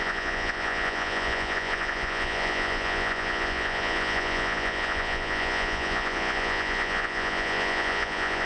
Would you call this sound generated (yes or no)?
yes